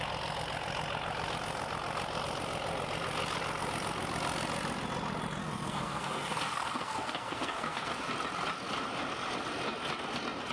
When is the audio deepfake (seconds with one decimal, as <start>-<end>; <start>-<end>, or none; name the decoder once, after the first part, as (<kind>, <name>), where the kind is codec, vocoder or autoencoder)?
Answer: 5.4-8.1 (codec, SNAC)